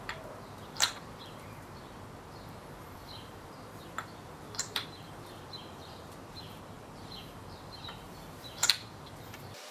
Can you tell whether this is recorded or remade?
remade